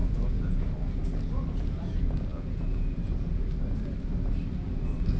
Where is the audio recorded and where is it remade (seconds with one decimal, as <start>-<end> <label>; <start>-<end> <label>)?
0.0-0.6 remade; 0.6-2.3 recorded; 2.3-3.4 remade; 3.4-5.2 recorded